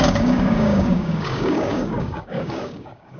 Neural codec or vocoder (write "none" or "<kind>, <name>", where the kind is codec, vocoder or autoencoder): codec, DAC